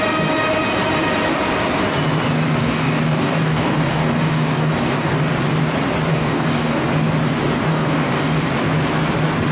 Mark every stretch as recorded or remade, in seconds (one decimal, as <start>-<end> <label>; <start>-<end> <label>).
0.0-2.6 recorded; 2.6-5.3 remade; 5.3-6.1 recorded; 6.1-6.8 remade; 6.8-7.7 recorded; 7.7-8.5 remade; 8.5-9.5 recorded